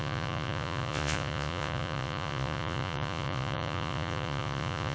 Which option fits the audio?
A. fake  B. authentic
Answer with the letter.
A